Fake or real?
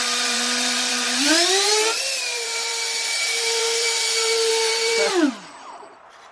fake